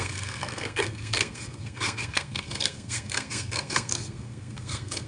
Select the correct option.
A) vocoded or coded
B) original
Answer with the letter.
A